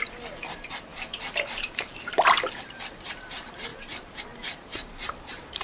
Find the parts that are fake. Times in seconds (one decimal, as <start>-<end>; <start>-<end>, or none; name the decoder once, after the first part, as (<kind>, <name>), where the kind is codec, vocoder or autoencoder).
0.0-5.6 (vocoder, BigVGAN v2)